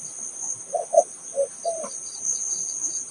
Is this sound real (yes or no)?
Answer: yes